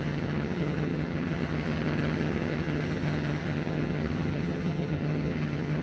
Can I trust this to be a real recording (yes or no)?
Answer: no